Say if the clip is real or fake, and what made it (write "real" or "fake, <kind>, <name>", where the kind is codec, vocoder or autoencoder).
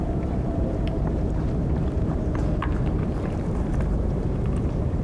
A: fake, vocoder, BigVGAN v2